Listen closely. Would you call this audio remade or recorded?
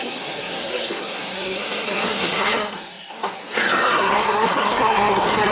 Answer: remade